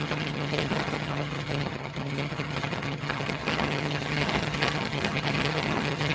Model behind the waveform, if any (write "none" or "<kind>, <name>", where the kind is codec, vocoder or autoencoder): vocoder, HiFi-GAN